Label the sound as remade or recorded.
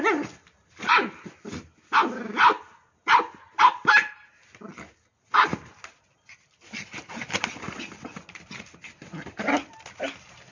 recorded